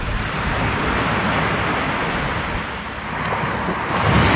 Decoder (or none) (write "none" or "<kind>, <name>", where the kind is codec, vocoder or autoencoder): none